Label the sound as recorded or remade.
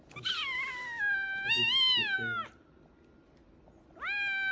recorded